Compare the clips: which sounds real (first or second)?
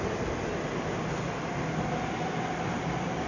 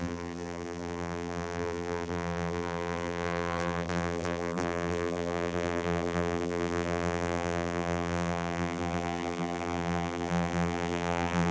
first